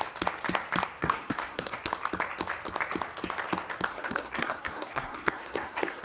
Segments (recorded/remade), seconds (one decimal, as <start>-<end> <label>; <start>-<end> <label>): 0.0-1.0 recorded; 1.0-1.8 remade; 1.8-3.9 recorded; 3.9-6.0 remade